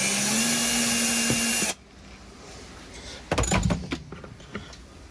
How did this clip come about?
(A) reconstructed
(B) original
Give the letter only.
B